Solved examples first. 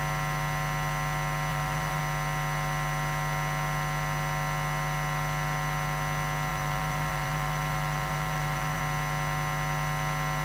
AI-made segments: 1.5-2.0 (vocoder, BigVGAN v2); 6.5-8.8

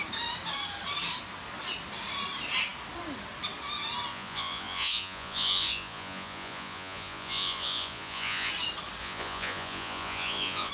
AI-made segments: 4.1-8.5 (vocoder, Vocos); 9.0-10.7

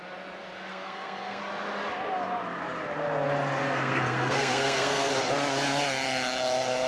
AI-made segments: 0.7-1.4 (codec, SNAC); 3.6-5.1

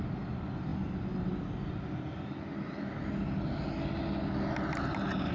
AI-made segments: none

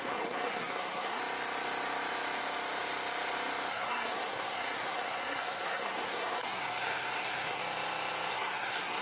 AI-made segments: 0.0-1.2 (codec, SNAC); 3.7-7.6; 8.3-9.0

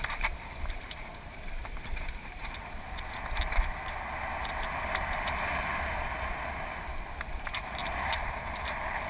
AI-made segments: 0.0-2.4 (vocoder, BigVGAN v2); 7.3-7.8; 8.6-9.1

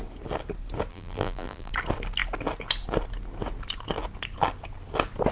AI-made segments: 0.9-1.7 (vocoder, BigVGAN v2)

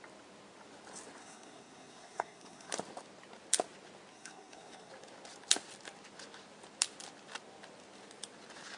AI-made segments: 1.2-2.7 (codec, SNAC); 4.1-4.9